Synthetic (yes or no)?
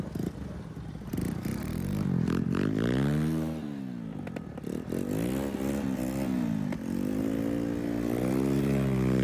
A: no